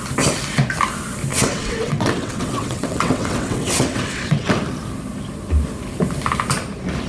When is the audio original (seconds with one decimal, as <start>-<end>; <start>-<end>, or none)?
0.0-1.3; 4.5-7.1